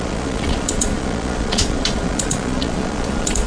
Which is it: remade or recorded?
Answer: remade